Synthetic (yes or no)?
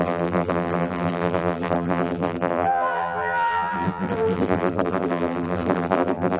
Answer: yes